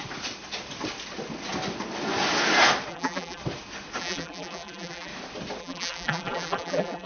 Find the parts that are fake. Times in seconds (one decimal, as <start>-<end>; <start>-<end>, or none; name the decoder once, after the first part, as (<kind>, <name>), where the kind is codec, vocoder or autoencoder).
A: 2.9-3.4 (vocoder, BigVGAN v2); 4.0-5.1; 5.6-7.1